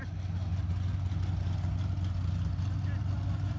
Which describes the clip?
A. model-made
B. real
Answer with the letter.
B